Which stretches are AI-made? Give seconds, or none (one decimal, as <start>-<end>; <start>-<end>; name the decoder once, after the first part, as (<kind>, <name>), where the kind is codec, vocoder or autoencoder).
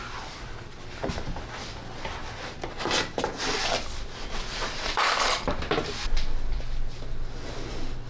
4.5-5.2 (vocoder, BigVGAN v2)